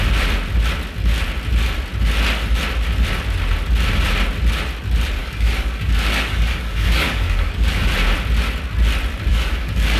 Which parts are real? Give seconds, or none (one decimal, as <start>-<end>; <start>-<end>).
0.0-5.2; 7.8-9.3

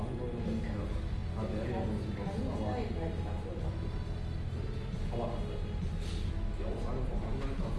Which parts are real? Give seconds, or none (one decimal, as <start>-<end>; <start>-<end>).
0.0-7.8

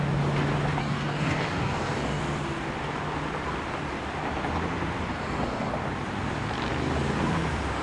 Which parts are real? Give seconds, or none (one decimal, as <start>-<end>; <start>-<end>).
0.0-0.8; 2.2-5.1; 5.7-7.8

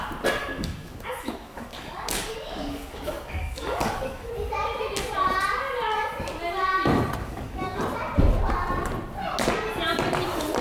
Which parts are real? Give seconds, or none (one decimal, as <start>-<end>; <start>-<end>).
0.0-0.4; 4.3-7.2; 7.8-10.6

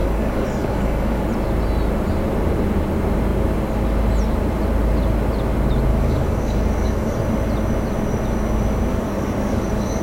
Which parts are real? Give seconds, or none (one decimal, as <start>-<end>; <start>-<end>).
1.2-5.9; 7.2-8.9

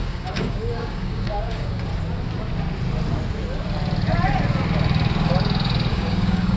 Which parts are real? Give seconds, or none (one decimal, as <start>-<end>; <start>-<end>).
1.9-5.9